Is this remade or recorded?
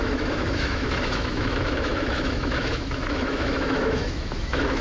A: remade